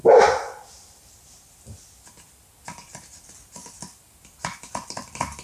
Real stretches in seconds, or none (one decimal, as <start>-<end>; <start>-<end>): 0.0-5.4